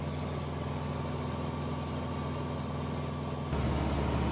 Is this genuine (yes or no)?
yes